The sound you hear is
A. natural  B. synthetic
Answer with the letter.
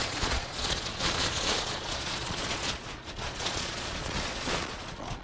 B